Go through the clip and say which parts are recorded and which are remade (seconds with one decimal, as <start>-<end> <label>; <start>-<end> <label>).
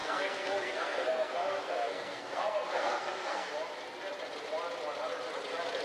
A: 0.0-3.5 remade; 3.5-5.8 recorded